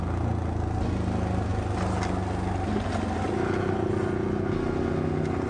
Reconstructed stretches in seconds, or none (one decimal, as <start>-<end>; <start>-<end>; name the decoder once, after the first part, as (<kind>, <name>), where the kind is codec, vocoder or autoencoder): none